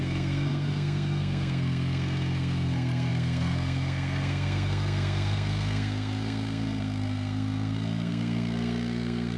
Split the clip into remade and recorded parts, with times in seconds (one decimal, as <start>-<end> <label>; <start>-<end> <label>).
0.0-9.4 remade